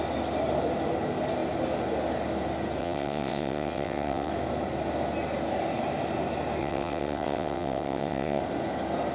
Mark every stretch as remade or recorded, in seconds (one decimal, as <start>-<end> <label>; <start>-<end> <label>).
0.0-2.8 recorded; 2.8-4.3 remade; 4.3-6.6 recorded; 6.6-8.4 remade; 8.4-9.1 recorded